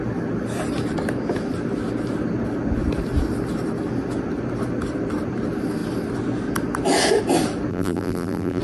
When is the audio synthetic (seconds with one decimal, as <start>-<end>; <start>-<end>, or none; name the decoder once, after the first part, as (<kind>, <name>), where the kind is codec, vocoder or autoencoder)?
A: 7.7-8.6 (vocoder, BigVGAN v2)